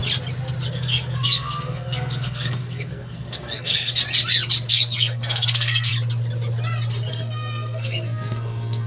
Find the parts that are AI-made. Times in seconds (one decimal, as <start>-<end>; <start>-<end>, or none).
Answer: 0.7-4.0; 4.7-5.9; 7.1-8.9